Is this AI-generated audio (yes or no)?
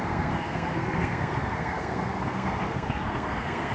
yes